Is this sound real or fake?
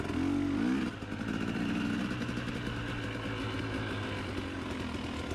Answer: real